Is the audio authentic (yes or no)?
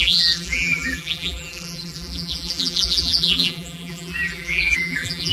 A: no